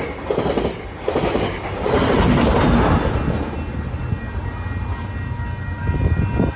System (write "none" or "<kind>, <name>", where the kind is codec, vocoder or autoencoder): none